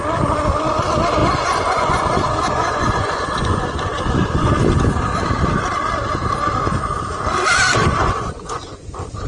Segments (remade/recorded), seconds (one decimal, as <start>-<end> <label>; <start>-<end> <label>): 0.0-1.2 recorded; 1.2-4.5 remade; 4.5-7.8 recorded; 7.8-8.8 remade; 8.8-9.3 recorded